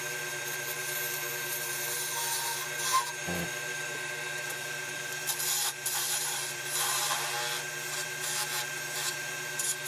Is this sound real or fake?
fake